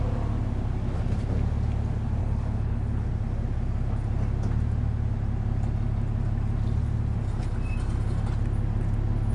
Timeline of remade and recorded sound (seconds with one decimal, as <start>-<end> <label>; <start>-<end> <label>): 0.0-2.2 recorded; 2.2-3.1 remade; 3.1-9.3 recorded